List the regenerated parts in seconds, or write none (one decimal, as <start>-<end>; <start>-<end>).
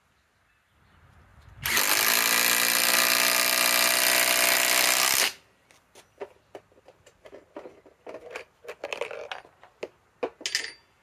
none